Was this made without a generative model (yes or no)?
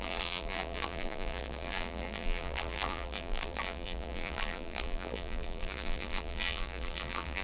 no